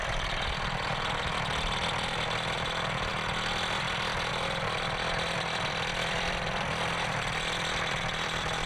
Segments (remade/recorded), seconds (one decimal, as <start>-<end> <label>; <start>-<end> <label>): 0.0-3.1 remade; 3.1-4.3 recorded; 4.3-8.7 remade